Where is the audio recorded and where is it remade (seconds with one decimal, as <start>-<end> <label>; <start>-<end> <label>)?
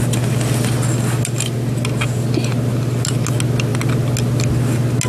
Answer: 0.0-5.1 recorded